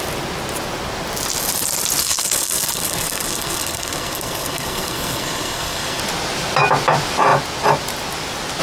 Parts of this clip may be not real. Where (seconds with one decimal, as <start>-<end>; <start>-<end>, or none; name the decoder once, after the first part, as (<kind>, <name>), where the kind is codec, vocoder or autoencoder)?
2.0-6.0 (codec, SNAC)